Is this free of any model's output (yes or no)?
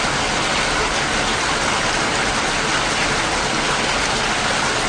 yes